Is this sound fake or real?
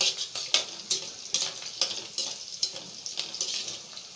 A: real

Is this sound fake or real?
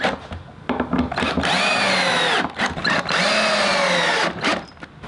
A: real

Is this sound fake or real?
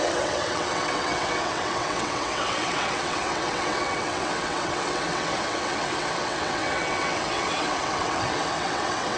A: fake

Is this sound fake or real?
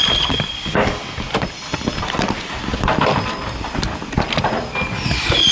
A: real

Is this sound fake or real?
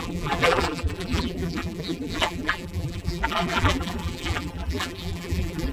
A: fake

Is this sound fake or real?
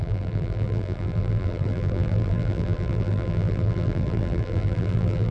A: fake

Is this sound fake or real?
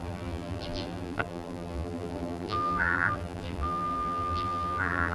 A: fake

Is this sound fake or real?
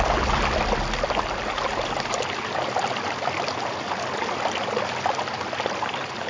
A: real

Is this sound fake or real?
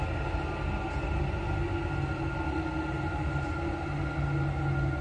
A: real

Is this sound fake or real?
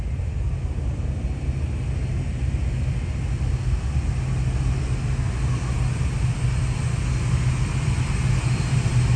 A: real